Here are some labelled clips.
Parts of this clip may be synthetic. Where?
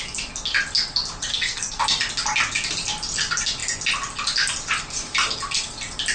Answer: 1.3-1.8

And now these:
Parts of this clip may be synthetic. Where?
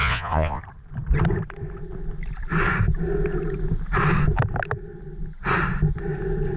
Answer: 0.0-0.6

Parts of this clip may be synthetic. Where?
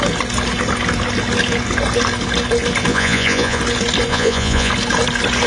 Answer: 2.9-3.6; 4.1-4.7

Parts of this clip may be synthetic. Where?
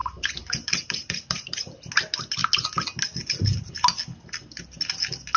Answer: 0.0-1.9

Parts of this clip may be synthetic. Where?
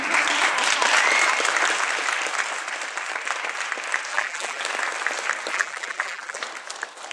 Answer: 4.1-4.6; 5.5-6.4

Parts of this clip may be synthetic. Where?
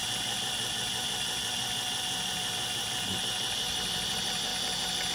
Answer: 0.0-4.5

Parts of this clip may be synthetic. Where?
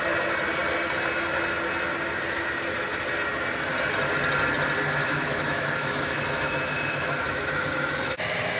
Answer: 5.0-8.2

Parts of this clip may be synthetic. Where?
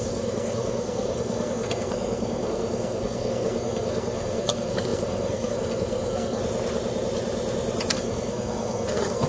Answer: 0.0-6.4; 7.9-9.3